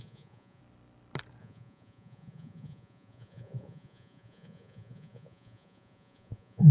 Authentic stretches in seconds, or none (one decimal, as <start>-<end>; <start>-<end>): 0.6-1.4